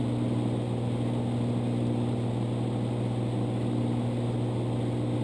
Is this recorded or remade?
recorded